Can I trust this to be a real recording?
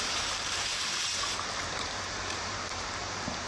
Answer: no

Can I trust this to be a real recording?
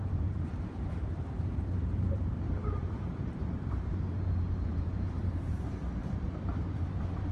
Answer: no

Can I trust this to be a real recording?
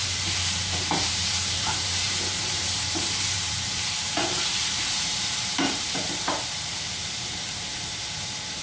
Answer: no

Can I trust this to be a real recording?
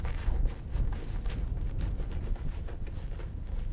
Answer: yes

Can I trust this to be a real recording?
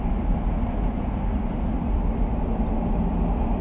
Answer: yes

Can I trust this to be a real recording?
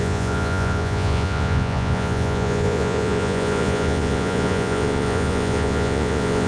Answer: no